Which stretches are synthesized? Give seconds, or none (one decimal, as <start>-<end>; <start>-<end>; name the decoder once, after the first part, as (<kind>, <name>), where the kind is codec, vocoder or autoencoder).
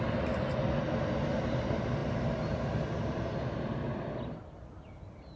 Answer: none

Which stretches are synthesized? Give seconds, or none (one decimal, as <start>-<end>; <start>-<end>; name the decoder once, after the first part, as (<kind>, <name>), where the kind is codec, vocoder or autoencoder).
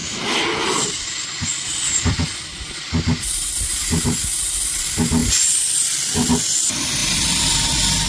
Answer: 7.0-8.1 (vocoder, BigVGAN v2)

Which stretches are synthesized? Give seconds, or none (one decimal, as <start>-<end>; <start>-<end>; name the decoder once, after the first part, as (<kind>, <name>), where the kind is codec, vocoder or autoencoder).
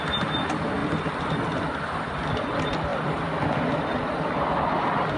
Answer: 2.9-4.8 (vocoder, BigVGAN v2)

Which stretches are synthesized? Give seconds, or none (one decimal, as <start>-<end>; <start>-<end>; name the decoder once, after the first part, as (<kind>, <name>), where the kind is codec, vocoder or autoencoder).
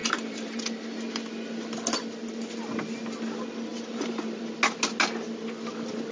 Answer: 0.0-0.6 (vocoder, BigVGAN v2); 3.7-4.4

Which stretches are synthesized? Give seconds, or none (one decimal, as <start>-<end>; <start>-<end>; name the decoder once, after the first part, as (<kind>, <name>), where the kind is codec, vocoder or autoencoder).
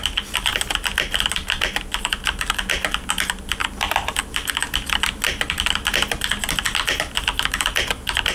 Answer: none